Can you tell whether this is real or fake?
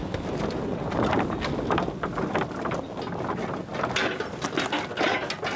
real